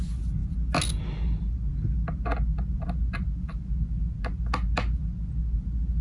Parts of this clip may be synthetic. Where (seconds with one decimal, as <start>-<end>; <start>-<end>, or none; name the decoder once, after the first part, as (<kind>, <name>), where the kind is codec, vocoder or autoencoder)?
none